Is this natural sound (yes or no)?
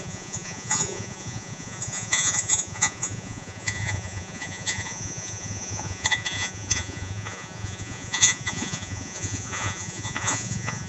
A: no